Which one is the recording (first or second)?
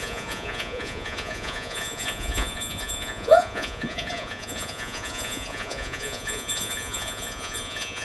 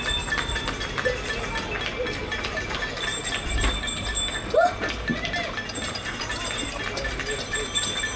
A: second